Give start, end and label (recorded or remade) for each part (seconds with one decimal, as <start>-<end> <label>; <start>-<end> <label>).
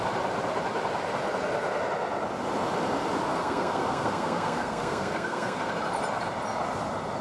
0.0-3.3 recorded; 3.3-5.7 remade; 5.7-7.2 recorded